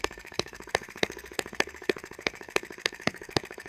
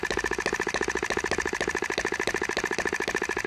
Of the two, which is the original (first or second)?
second